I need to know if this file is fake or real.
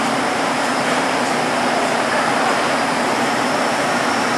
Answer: fake